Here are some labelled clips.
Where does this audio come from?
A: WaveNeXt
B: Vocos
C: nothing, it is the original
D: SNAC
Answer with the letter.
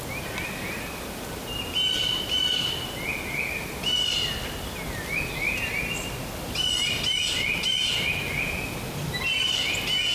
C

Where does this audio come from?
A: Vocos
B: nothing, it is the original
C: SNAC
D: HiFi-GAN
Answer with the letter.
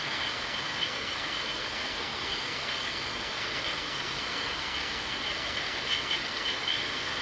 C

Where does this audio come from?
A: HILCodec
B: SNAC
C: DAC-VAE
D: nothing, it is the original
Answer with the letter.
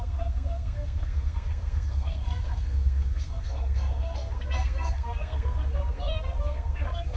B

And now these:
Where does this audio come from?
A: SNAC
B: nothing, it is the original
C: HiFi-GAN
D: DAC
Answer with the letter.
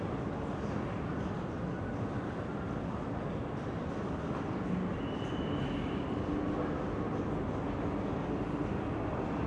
B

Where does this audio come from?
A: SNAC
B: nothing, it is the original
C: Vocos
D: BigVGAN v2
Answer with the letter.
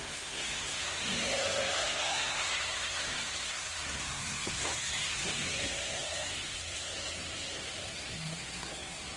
A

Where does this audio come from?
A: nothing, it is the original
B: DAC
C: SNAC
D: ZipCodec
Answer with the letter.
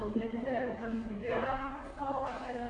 C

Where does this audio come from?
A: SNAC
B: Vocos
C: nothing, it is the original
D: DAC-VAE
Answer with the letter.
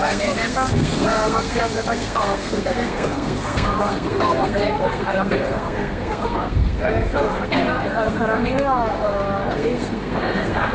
A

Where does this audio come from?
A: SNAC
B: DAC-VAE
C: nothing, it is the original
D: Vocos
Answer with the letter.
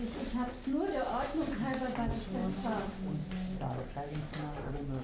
C